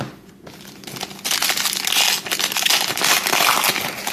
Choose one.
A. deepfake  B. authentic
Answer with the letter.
B